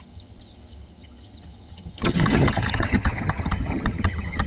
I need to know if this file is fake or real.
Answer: fake